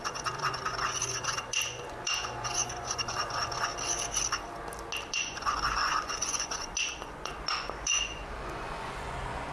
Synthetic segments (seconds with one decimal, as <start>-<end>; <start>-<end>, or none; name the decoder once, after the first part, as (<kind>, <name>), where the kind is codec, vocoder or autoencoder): 0.0-3.7 (vocoder, Vocos); 5.1-9.5